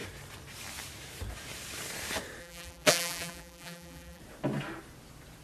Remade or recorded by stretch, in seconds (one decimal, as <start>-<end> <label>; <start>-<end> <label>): 0.0-2.4 recorded; 2.4-4.2 remade; 4.2-5.4 recorded